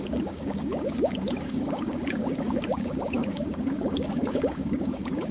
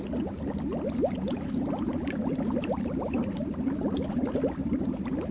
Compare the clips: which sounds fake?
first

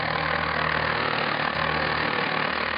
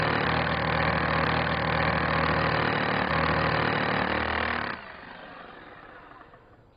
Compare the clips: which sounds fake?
first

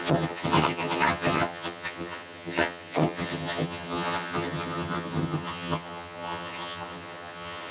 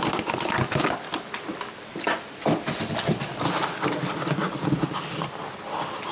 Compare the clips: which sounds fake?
first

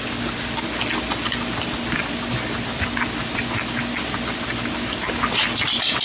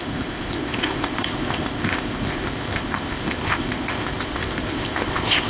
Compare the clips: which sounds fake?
second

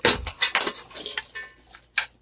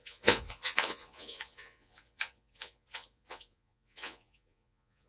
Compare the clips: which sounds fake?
second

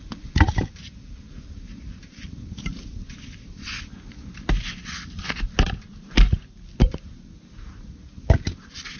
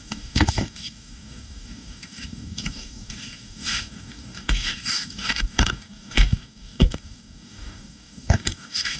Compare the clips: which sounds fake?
second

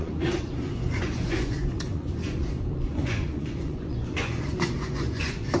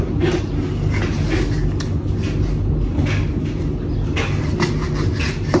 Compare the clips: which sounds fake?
first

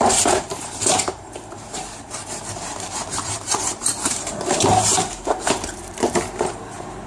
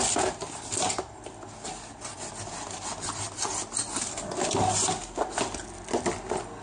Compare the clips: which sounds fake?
first